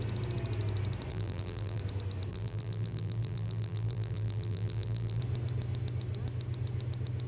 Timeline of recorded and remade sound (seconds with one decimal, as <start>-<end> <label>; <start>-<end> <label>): 0.0-1.1 recorded; 1.1-1.8 remade; 1.8-2.3 recorded; 2.3-5.2 remade; 5.2-7.3 recorded